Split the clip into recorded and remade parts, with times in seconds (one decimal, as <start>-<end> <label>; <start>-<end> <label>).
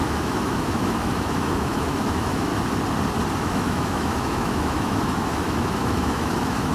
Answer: 0.0-2.5 remade; 2.5-3.4 recorded; 3.4-6.7 remade